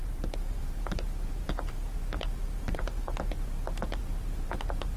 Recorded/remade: remade